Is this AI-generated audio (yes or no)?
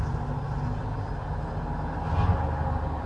no